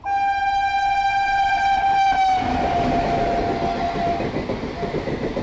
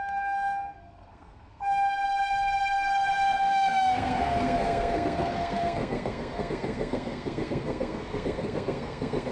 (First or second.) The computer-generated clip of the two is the second